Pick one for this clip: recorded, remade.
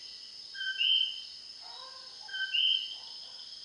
recorded